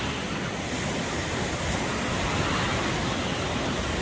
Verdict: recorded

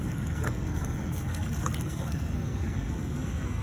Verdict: remade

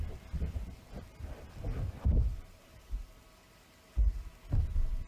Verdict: recorded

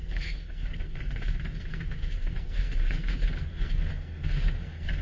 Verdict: remade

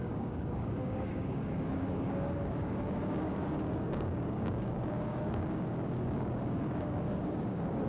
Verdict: remade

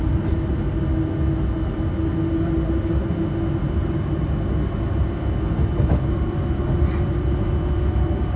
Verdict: recorded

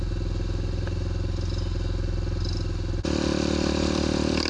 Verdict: recorded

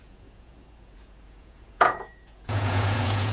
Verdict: remade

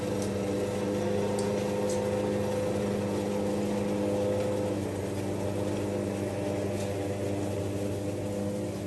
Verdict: recorded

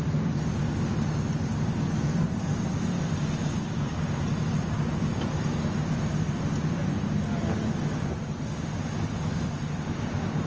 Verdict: recorded